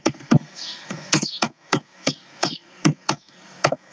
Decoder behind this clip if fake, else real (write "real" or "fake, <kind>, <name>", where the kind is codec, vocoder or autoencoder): fake, codec, SNAC